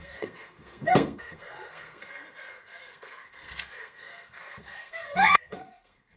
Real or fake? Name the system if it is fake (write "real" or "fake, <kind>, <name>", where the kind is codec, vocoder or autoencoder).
fake, codec, SNAC